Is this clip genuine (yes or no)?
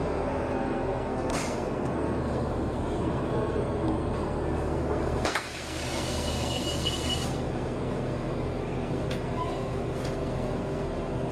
no